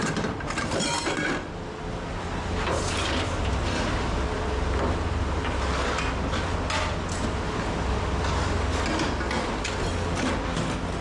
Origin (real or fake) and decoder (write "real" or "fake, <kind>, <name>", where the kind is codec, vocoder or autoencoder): real